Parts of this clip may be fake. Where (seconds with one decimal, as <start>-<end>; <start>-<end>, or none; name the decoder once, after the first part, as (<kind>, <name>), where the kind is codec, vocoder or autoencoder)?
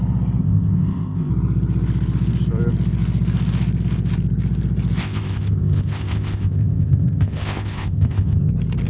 0.4-1.3 (codec, ZipCodec); 5.0-8.5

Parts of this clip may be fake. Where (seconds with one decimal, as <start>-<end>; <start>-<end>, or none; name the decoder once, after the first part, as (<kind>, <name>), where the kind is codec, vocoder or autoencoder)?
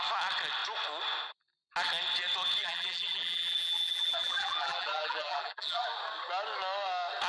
2.6-5.8 (vocoder, BigVGAN v2)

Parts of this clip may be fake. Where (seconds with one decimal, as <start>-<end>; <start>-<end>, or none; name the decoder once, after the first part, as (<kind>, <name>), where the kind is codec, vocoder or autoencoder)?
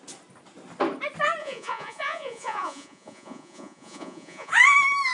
1.4-4.5 (vocoder, Vocos)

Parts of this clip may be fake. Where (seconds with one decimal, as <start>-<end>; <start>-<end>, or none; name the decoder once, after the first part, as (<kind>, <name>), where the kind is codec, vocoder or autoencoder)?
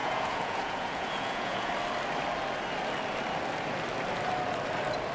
0.0-1.7 (vocoder, Vocos)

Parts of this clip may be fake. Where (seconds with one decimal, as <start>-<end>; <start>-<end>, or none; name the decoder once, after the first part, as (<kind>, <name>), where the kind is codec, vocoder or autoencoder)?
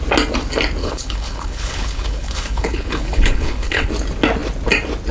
0.8-3.9 (codec, HILCodec)